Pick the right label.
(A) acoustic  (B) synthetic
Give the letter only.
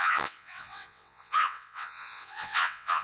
B